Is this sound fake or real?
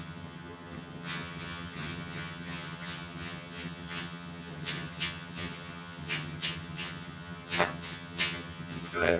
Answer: fake